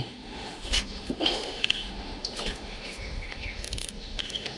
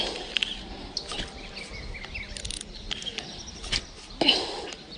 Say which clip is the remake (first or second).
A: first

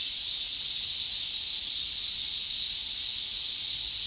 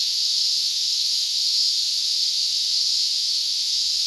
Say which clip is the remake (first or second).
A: second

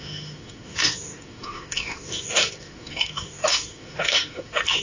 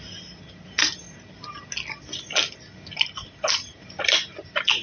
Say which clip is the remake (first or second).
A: first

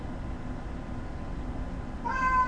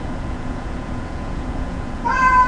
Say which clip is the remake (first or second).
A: second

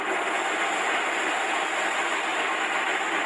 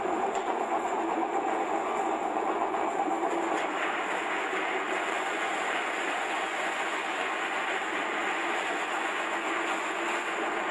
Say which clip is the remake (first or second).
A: second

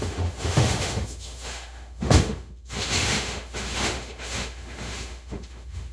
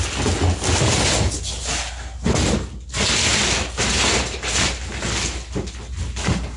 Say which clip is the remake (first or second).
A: first